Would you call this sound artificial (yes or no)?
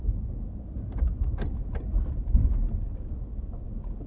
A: no